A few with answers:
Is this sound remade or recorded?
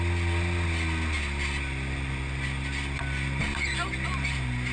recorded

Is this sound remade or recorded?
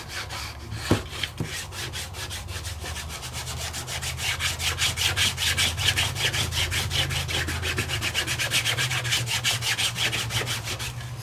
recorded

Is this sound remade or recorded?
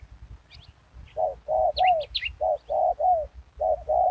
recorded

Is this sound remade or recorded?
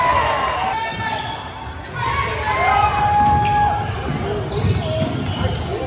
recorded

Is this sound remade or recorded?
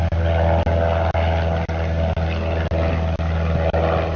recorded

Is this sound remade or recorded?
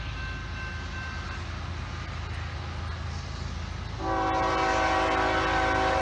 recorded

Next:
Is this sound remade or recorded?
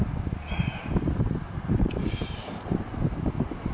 recorded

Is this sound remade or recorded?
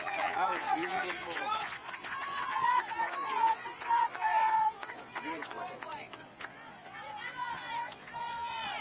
remade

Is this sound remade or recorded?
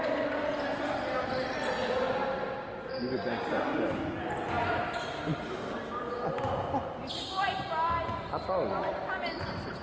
recorded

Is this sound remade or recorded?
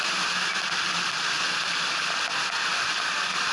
recorded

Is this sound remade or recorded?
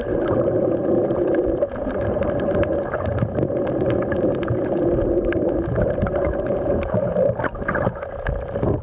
recorded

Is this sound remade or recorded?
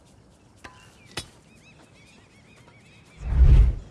recorded